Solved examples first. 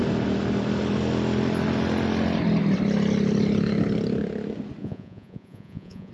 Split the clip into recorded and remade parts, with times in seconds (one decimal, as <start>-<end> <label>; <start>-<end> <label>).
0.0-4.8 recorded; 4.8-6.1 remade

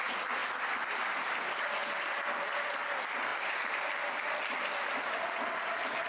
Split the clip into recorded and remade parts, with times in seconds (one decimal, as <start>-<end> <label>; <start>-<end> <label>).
0.0-6.1 recorded

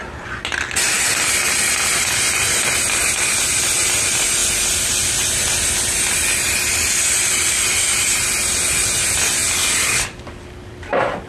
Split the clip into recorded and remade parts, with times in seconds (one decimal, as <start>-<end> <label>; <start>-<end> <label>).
0.0-11.3 recorded